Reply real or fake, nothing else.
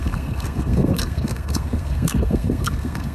fake